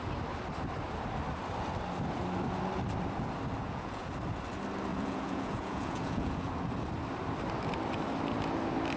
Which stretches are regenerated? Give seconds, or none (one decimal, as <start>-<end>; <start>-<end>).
3.6-4.1; 4.9-6.5